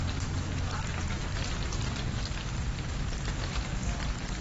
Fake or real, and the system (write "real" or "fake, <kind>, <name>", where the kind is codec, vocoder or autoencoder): real